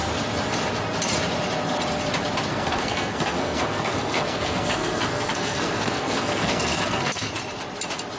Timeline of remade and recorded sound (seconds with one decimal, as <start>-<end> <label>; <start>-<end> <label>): 0.0-2.5 recorded; 2.5-7.3 remade; 7.3-8.2 recorded